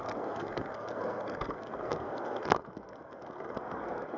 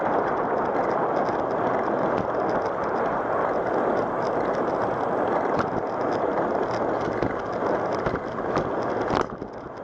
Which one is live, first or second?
second